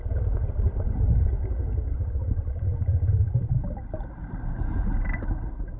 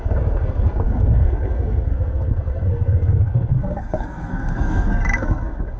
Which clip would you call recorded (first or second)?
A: first